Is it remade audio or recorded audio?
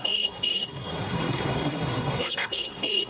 remade